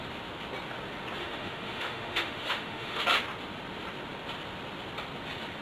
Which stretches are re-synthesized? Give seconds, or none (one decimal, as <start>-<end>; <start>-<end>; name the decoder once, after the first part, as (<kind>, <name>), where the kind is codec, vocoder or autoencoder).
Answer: 1.2-3.0 (autoencoder, DAC-VAE)